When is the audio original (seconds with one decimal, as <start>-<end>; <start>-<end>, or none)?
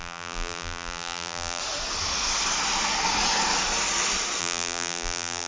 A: 1.6-4.4